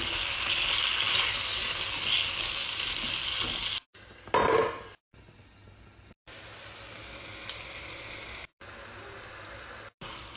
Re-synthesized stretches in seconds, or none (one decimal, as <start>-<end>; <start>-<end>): none